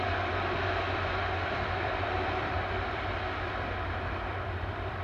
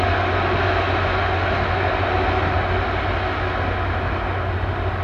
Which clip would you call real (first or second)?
second